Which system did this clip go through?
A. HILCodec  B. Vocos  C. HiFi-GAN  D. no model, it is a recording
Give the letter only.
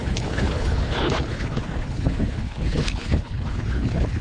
A